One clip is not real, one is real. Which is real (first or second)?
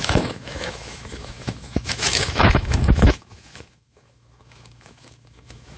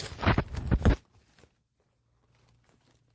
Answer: second